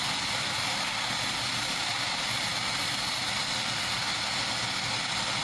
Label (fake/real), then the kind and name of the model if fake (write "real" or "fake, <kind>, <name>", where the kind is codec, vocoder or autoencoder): real